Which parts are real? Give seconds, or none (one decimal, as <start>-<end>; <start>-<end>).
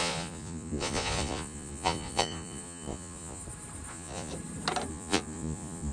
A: 3.4-3.9; 4.3-4.9